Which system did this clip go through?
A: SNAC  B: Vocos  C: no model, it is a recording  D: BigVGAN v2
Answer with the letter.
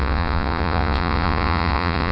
B